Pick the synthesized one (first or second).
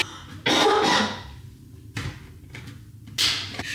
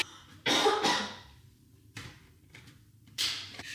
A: second